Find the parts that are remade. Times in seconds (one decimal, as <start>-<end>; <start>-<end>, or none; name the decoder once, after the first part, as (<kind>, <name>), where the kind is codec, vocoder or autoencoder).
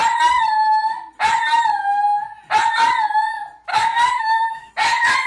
3.7-4.7 (codec, SNAC)